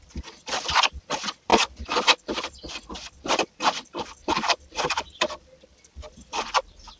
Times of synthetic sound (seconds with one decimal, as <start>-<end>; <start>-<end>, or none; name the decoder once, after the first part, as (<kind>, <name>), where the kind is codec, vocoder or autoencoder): 0.0-7.0 (vocoder, BigVGAN v2)